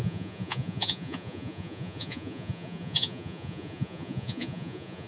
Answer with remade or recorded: remade